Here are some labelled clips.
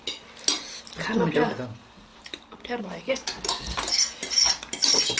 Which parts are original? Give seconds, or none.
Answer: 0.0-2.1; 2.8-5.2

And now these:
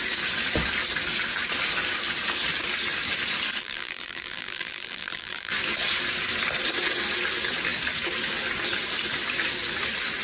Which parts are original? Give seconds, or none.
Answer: 0.0-3.6; 5.5-10.2

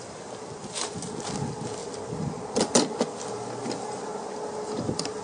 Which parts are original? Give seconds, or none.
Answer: 0.0-1.8

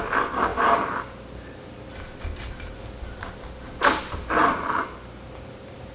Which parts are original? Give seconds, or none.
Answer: 0.0-4.4

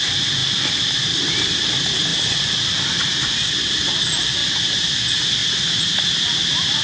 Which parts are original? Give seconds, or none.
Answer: 0.0-4.4; 4.9-5.4; 6.0-6.8

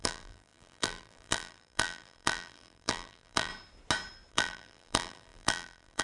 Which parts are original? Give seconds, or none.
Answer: 3.5-4.3

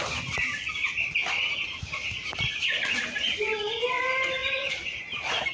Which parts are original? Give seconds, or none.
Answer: 0.0-1.2; 1.8-4.4